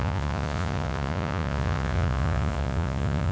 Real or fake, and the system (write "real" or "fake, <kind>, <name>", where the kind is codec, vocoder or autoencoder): fake, vocoder, Vocos